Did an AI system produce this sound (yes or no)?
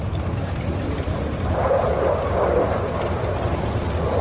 no